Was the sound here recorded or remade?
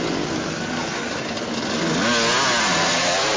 recorded